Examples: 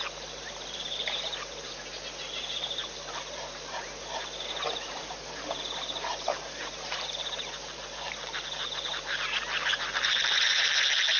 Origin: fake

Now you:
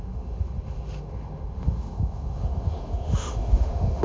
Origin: fake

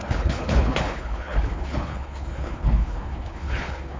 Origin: fake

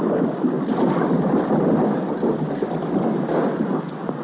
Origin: real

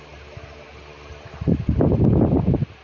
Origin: real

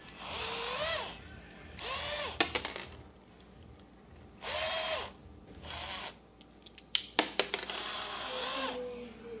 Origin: real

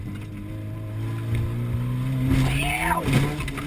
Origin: real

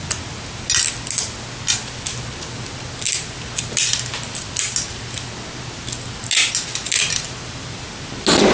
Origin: real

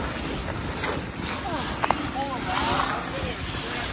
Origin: real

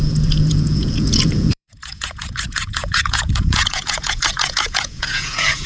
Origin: fake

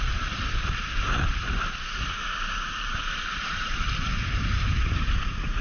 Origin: fake